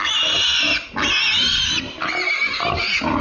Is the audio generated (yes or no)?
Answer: no